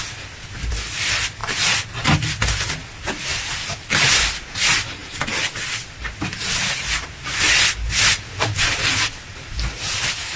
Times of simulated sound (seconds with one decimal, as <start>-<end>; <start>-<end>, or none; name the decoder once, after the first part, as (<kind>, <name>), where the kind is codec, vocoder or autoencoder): none